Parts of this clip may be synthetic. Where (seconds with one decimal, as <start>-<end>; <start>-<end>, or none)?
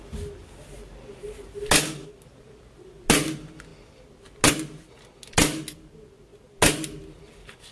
none